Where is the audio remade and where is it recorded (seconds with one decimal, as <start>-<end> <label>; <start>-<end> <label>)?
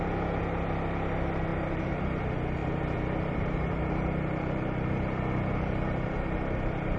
0.0-1.5 recorded; 1.5-2.2 remade; 2.2-2.6 recorded; 2.6-7.0 remade